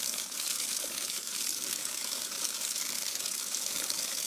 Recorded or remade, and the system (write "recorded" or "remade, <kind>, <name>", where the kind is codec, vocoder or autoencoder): remade, codec, DAC